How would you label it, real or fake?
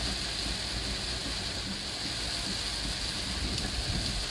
real